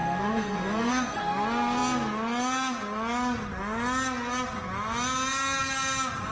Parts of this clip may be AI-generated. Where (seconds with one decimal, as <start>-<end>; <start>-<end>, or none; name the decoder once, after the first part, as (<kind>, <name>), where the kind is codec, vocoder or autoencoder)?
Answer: 0.0-1.2 (codec, SNAC)